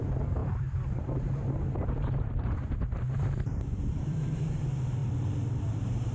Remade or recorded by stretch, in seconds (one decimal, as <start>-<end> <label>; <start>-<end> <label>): 0.0-5.0 remade; 5.0-5.6 recorded; 5.6-6.1 remade